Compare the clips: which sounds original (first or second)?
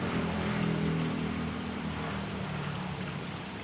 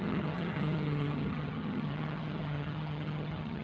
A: first